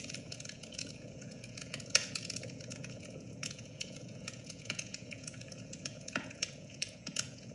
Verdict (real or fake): fake